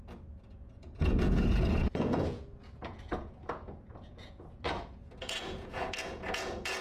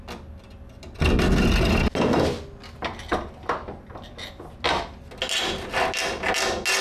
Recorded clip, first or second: second